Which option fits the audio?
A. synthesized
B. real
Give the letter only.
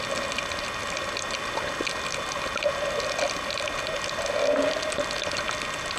B